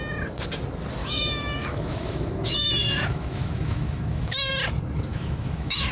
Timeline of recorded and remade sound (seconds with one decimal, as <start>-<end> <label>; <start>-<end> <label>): 0.0-1.0 recorded; 1.0-4.5 remade; 4.5-5.1 recorded; 5.1-5.9 remade